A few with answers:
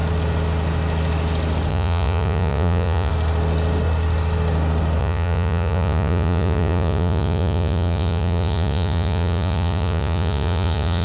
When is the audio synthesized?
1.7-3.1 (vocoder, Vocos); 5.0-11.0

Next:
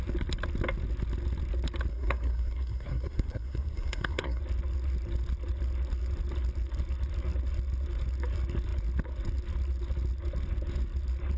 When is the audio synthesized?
1.9-4.4 (codec, SNAC)

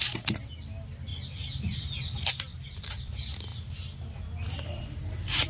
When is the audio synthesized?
0.0-1.1 (vocoder, BigVGAN v2); 2.3-5.5

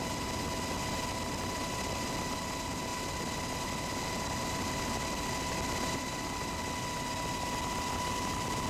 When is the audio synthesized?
none

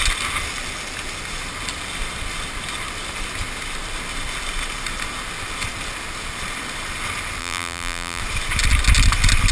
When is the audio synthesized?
7.4-8.2 (vocoder, BigVGAN v2)

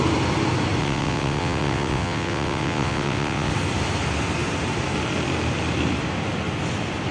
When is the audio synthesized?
0.8-3.5 (vocoder, WaveNeXt)

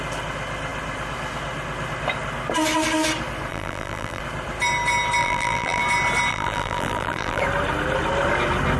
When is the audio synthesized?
3.5-4.2 (vocoder, BigVGAN v2); 5.2-5.8; 6.3-7.4

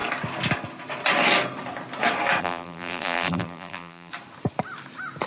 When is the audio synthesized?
2.4-4.1 (vocoder, BigVGAN v2)